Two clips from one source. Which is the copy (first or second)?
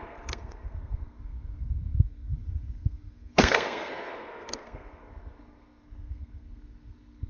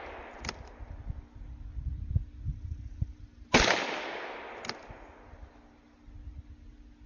first